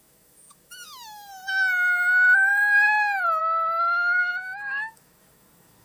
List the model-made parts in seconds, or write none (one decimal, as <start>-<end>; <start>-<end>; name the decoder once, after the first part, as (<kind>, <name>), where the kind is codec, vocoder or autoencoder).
0.0-1.3 (autoencoder, DAC-VAE); 3.4-5.8

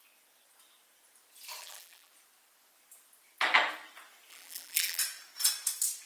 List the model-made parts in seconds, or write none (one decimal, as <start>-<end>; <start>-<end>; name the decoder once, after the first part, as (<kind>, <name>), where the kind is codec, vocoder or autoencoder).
1.6-2.1 (vocoder, BigVGAN v2); 4.3-5.0

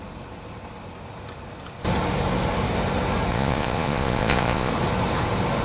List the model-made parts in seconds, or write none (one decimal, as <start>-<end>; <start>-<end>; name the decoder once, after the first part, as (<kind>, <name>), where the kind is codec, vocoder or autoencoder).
3.3-4.7 (vocoder, Vocos)

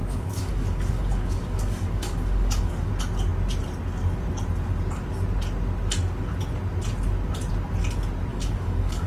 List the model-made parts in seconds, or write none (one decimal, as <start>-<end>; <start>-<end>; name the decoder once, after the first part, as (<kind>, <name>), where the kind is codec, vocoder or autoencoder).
0.0-2.9 (codec, DAC); 8.3-9.1

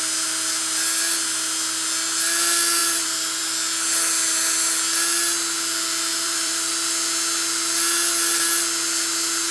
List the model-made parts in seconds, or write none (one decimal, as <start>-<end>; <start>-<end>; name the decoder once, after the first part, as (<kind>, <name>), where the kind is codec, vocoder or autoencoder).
2.8-3.4 (vocoder, BigVGAN v2); 6.1-6.7